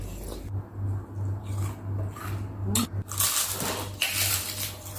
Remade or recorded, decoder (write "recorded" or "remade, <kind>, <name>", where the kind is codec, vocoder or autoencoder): recorded